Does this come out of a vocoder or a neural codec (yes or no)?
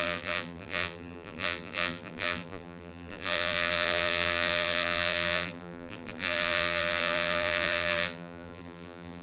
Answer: yes